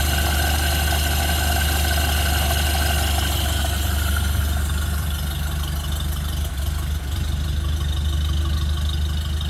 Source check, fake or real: real